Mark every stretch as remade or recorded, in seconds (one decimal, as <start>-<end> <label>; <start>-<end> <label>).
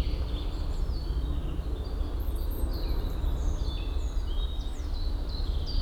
0.0-5.8 recorded